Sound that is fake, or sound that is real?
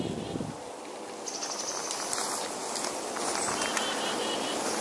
real